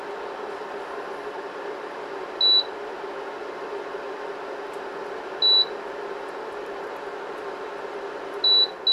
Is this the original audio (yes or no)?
yes